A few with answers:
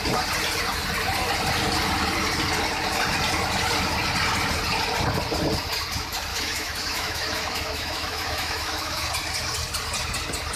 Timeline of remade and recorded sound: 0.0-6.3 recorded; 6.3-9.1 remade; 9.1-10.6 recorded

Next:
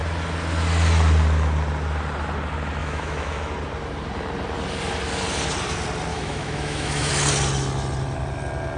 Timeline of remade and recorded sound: 0.0-2.8 recorded; 2.8-3.5 remade; 3.5-6.1 recorded; 6.1-7.1 remade; 7.1-8.8 recorded